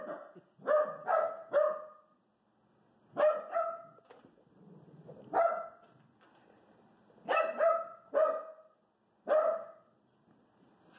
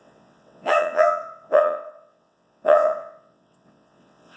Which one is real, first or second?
first